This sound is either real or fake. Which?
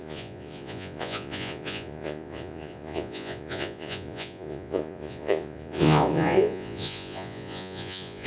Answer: fake